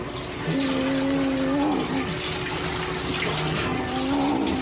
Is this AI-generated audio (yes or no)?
no